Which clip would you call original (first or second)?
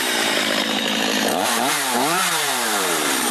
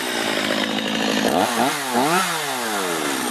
second